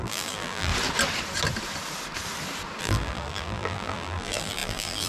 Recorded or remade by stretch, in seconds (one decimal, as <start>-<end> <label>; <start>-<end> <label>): 0.0-0.7 remade; 0.7-2.8 recorded; 2.8-5.1 remade